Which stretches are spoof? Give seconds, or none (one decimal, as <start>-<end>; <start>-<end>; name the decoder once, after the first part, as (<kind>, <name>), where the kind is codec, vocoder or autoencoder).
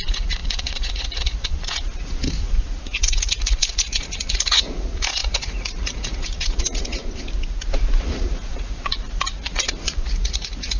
0.0-7.0 (vocoder, Vocos); 8.0-10.8